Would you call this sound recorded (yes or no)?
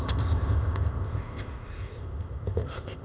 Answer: no